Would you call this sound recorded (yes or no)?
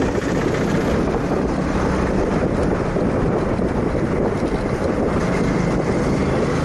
yes